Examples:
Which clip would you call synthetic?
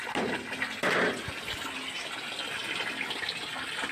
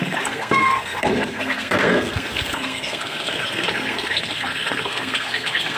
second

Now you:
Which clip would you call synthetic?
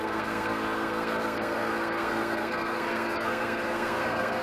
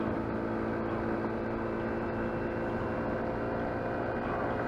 first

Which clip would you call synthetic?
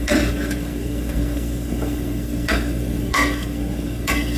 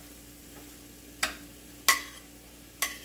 first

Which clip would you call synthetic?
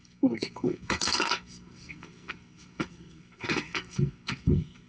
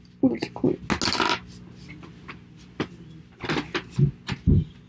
first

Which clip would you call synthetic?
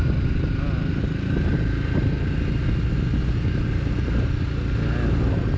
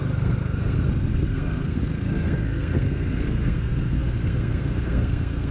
second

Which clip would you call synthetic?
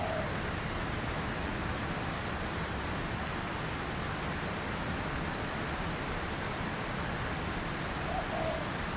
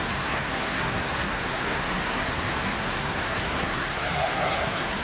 second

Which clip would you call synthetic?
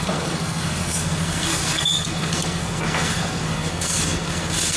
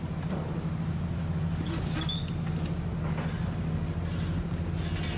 first